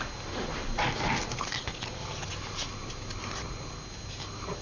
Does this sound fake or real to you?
real